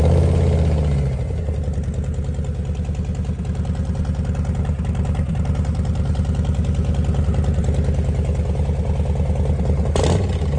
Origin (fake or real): real